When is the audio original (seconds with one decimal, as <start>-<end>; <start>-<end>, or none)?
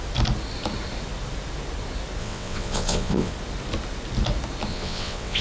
0.0-2.2; 3.3-4.7